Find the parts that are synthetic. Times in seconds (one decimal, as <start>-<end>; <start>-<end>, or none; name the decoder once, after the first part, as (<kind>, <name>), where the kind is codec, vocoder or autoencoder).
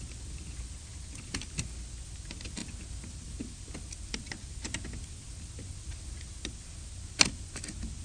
none